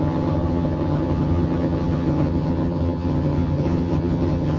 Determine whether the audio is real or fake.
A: fake